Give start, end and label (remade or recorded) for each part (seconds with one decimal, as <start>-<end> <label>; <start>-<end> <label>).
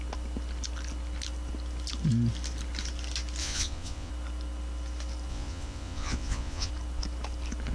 0.0-3.4 recorded; 3.4-4.1 remade; 4.1-5.3 recorded; 5.3-6.7 remade; 6.7-7.7 recorded